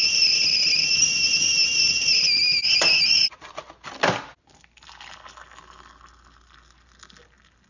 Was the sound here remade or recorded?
recorded